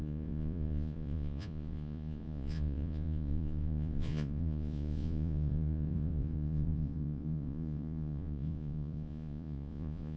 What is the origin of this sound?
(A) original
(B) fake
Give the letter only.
B